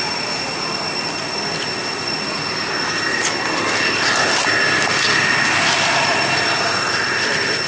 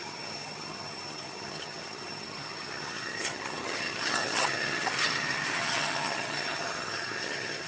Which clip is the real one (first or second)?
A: first